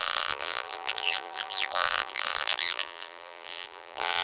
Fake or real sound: fake